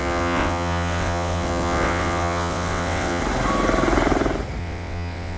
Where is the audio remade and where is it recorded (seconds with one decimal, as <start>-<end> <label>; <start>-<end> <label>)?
0.0-3.2 remade; 3.2-4.6 recorded; 4.6-5.4 remade